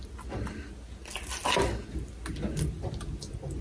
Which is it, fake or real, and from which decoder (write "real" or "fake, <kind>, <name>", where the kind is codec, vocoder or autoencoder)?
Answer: real